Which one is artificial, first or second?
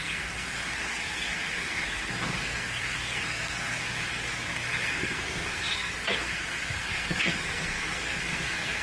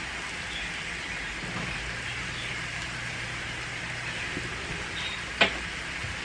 first